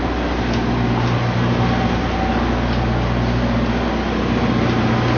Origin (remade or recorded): recorded